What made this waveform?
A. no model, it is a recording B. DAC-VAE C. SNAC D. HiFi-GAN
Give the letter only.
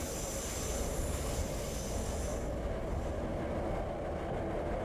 A